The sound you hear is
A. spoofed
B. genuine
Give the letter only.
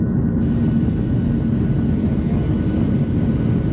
B